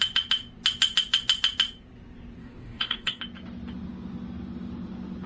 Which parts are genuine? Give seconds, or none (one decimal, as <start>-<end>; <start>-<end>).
0.0-2.4; 3.2-5.3